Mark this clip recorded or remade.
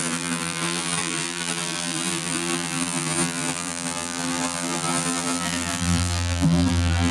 remade